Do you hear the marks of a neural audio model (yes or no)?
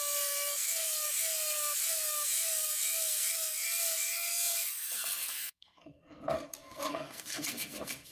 yes